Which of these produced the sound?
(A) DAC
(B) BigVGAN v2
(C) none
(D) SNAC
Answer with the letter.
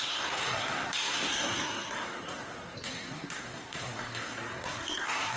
D